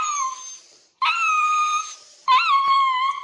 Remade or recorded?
remade